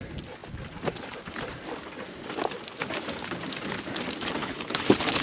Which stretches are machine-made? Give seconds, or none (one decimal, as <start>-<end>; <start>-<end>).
4.4-5.2